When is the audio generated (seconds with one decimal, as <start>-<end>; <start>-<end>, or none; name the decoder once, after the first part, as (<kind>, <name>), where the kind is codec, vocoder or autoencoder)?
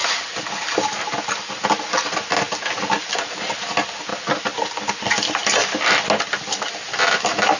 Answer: none